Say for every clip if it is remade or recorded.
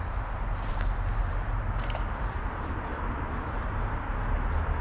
recorded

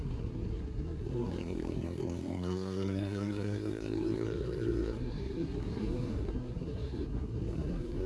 remade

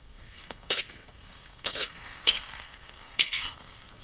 remade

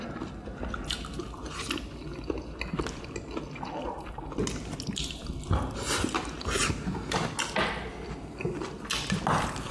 recorded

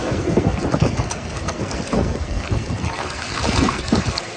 remade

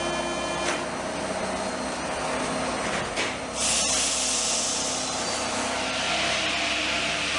recorded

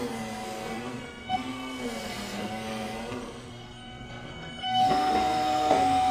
remade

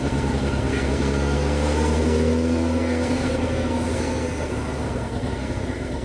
remade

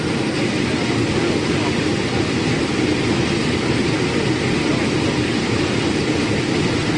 recorded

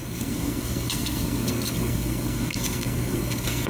remade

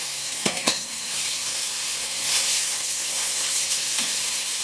remade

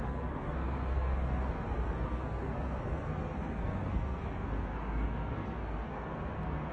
remade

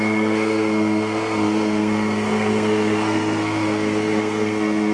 remade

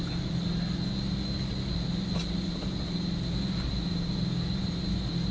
recorded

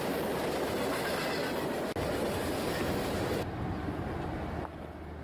recorded